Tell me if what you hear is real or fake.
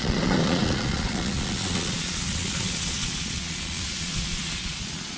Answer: fake